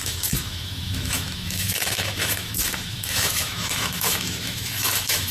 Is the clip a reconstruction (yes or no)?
yes